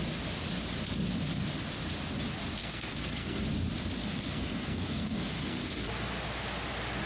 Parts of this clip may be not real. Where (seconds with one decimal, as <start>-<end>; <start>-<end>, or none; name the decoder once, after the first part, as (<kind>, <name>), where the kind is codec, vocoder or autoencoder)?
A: 2.6-3.4 (codec, SNAC); 4.0-5.9